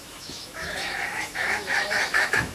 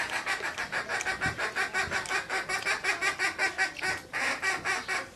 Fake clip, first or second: first